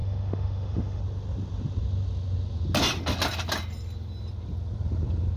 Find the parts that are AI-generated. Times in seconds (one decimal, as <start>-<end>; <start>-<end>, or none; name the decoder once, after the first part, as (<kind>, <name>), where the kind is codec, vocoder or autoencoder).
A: 0.0-1.0 (autoencoder, DAC-VAE)